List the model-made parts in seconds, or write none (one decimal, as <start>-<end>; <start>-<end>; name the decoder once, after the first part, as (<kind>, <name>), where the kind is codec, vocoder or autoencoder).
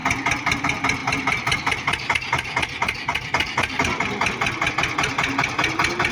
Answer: none